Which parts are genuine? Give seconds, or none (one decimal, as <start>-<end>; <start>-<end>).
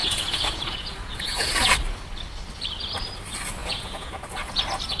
1.7-3.6; 4.6-5.0